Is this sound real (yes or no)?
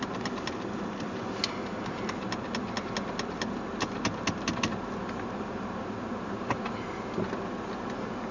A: yes